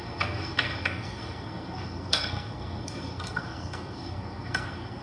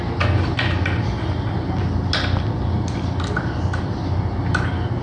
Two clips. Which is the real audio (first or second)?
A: second